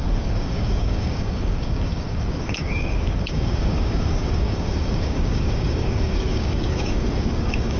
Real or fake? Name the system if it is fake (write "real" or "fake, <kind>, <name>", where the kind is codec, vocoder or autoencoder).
fake, codec, DAC